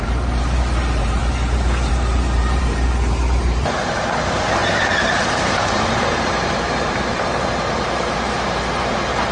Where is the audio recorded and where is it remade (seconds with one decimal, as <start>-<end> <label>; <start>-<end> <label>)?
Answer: 0.0-1.2 remade; 1.2-1.9 recorded; 1.9-9.3 remade